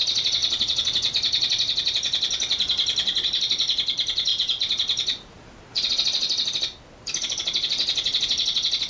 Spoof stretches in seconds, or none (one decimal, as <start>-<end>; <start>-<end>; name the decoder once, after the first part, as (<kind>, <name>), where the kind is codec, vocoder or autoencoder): none